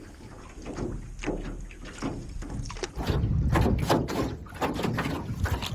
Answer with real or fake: real